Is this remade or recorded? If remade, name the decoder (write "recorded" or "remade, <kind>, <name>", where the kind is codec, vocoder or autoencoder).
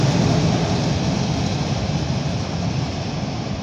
recorded